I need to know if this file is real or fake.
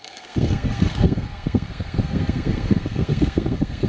fake